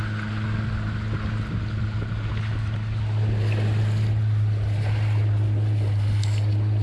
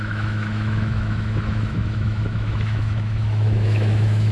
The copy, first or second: second